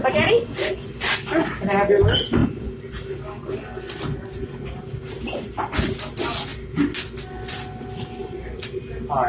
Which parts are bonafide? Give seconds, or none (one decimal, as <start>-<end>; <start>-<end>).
0.0-9.3

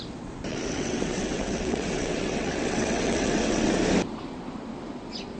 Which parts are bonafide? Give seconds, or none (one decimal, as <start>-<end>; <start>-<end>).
0.0-0.5; 3.7-5.4

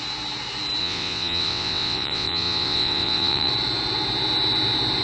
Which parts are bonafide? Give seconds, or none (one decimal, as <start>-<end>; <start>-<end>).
0.0-0.8; 3.5-5.0

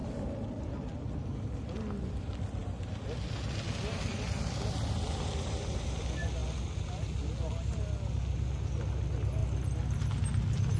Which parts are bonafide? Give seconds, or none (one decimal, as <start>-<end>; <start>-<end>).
0.0-10.8